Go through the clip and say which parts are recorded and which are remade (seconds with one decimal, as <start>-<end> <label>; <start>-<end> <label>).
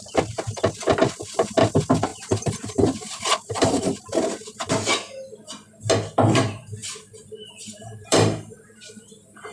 0.0-2.1 recorded; 2.1-4.0 remade; 4.0-6.8 recorded; 6.8-9.5 remade